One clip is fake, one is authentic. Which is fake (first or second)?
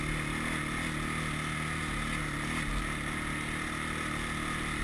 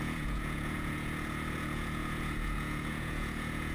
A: second